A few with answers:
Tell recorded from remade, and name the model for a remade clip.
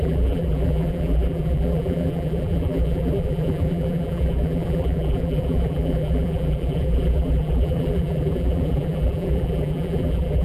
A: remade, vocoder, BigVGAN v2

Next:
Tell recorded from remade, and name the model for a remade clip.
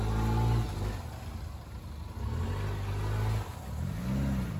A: recorded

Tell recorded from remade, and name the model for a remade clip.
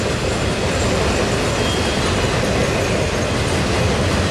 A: recorded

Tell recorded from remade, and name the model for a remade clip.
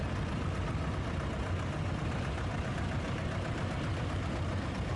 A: recorded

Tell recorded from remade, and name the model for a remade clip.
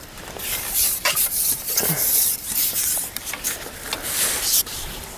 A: remade, vocoder, BigVGAN v2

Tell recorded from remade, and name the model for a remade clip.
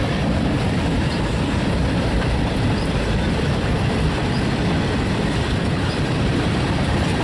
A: remade, vocoder, BigVGAN v2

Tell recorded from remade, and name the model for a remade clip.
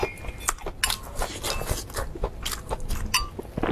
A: recorded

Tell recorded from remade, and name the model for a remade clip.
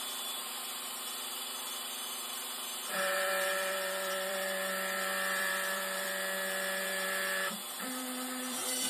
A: remade, vocoder, BigVGAN v2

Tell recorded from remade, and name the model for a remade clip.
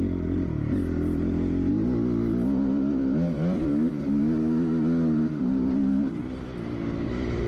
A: recorded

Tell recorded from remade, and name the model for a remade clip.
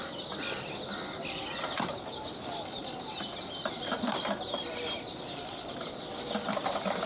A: recorded